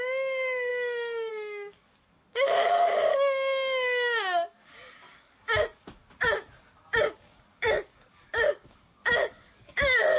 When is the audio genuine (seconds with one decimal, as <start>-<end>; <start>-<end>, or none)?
6.0-7.0